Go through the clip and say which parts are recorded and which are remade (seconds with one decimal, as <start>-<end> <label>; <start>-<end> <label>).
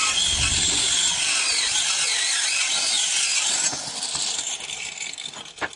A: 0.0-5.8 recorded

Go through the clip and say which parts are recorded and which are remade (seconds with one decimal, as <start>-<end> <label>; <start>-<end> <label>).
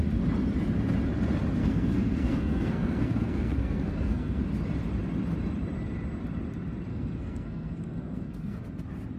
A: 0.0-1.6 recorded; 1.6-4.4 remade; 4.4-6.9 recorded; 6.9-8.6 remade; 8.6-9.2 recorded